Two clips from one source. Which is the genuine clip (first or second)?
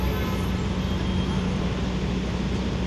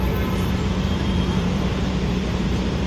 first